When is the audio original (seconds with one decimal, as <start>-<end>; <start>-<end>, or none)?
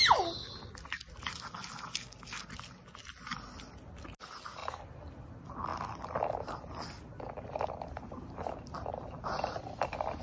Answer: 0.0-10.2